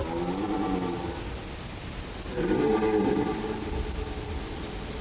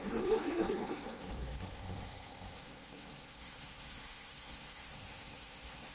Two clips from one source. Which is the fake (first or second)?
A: second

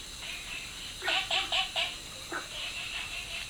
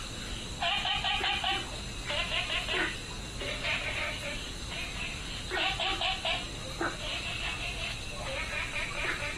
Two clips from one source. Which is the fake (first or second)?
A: first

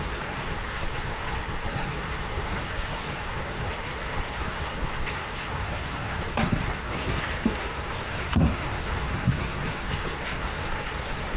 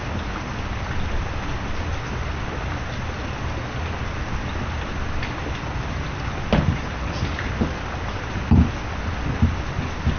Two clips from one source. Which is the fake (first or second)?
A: first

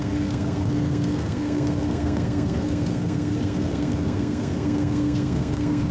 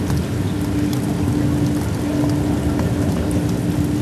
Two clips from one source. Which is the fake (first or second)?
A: first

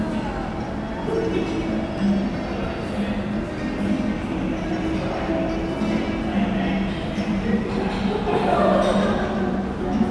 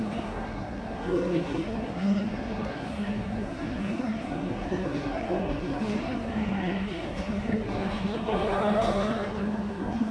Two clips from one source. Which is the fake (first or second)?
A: second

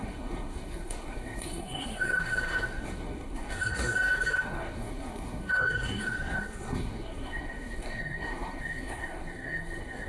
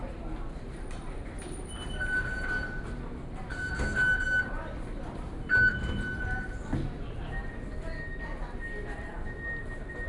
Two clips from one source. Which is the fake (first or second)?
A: first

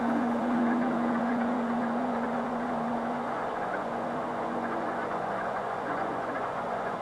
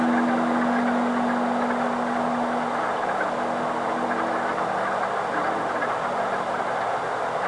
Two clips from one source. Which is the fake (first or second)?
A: first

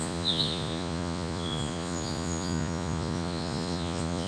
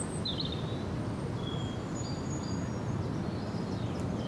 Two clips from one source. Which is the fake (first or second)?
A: first